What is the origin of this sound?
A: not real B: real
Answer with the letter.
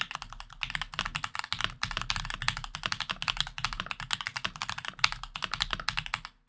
B